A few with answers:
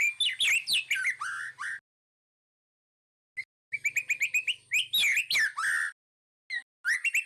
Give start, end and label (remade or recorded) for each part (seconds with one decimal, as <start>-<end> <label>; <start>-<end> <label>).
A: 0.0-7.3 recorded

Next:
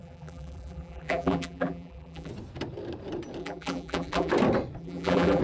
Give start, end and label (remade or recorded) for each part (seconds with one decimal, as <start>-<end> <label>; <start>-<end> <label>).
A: 0.0-2.3 remade; 2.3-3.4 recorded; 3.4-4.3 remade; 4.3-4.8 recorded; 4.8-5.4 remade

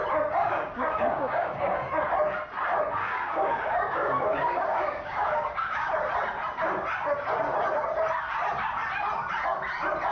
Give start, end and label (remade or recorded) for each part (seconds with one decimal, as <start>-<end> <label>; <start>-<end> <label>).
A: 0.0-0.4 recorded; 0.4-1.9 remade; 1.9-3.0 recorded; 3.0-5.9 remade; 5.9-10.1 recorded

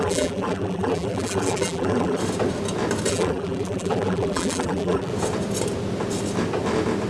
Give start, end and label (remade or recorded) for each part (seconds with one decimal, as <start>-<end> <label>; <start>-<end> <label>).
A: 0.0-2.2 remade; 2.2-3.1 recorded; 3.1-5.1 remade; 5.1-7.1 recorded

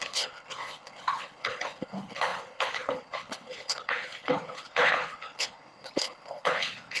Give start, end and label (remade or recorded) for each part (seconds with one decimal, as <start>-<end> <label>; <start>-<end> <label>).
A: 0.0-7.0 remade